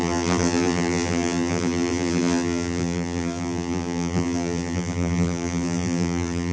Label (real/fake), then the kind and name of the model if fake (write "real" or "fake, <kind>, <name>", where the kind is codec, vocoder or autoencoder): fake, vocoder, BigVGAN v2